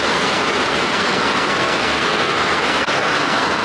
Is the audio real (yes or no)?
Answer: no